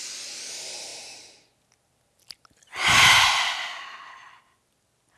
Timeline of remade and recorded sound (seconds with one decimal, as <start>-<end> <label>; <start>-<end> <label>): 0.0-5.2 recorded